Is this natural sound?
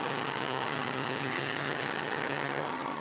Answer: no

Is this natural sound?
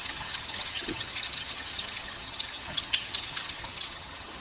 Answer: no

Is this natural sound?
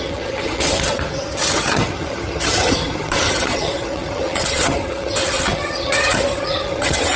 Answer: no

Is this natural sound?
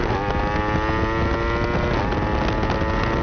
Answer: yes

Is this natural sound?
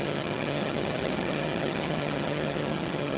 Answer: no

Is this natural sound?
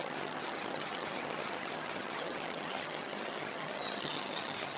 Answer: no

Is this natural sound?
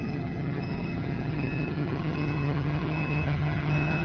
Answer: no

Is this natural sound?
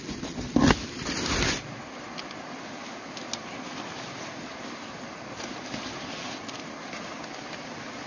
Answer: yes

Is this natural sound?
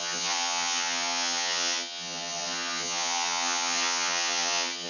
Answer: no